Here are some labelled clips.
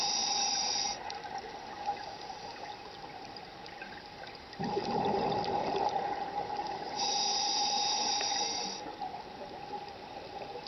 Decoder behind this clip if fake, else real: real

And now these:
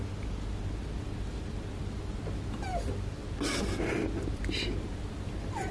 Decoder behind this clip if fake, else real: real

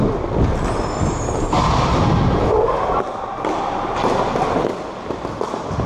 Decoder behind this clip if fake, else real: real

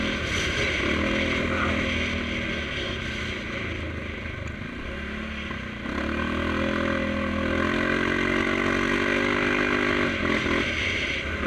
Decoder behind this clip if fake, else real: real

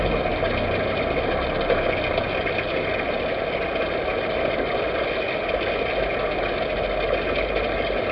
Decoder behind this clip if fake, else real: real